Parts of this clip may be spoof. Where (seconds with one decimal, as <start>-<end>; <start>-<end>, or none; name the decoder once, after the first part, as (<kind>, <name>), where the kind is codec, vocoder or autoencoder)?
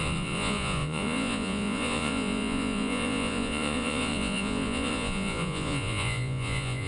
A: 0.0-6.9 (vocoder, Vocos)